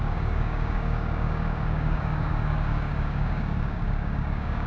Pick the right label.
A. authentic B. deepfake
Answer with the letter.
B